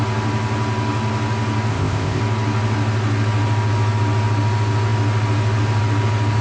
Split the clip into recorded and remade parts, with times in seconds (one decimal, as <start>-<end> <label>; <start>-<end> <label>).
0.0-1.7 recorded; 1.7-2.2 remade; 2.2-6.4 recorded